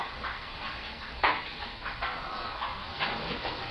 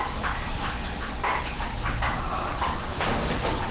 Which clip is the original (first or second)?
second